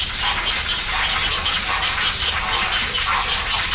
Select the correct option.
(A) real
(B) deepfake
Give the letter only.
A